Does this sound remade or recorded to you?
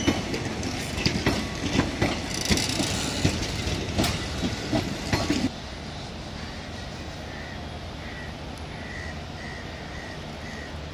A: recorded